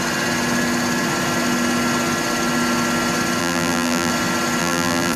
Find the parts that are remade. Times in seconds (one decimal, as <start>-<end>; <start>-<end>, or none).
3.4-4.1; 4.6-5.2